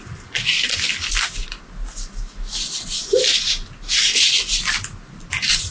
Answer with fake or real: real